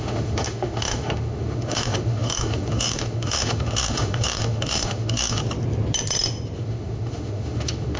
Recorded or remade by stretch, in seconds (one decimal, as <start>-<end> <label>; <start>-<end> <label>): 0.0-5.4 remade; 5.4-6.6 recorded; 6.6-8.0 remade